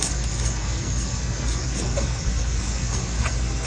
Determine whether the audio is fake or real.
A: fake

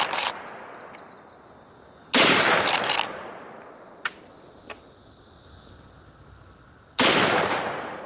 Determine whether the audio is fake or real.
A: real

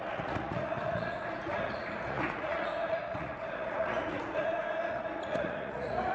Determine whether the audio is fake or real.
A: fake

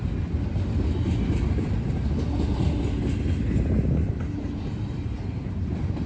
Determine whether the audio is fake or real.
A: real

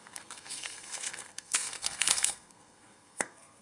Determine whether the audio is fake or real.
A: fake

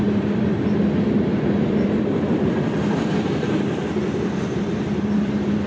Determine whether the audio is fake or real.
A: real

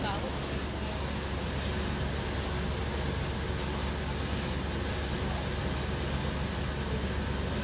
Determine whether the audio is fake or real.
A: real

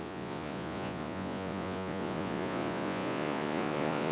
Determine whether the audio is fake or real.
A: fake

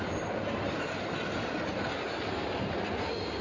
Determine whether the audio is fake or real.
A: real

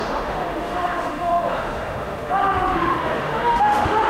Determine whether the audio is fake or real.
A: fake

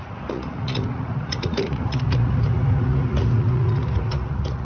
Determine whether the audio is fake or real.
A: fake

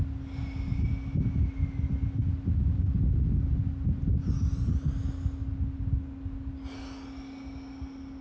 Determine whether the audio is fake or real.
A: real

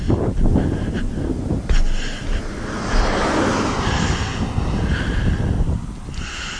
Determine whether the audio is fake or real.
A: real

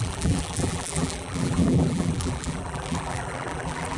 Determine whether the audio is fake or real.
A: fake